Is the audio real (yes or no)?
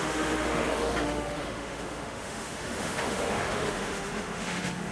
no